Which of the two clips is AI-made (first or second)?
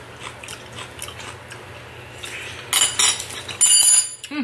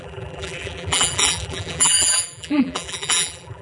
second